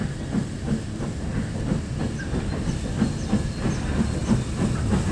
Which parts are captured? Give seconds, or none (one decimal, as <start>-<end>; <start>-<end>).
0.0-5.1